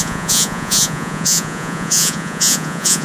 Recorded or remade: remade